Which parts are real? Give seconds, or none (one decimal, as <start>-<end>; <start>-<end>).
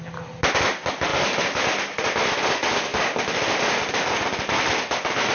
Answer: 0.0-5.3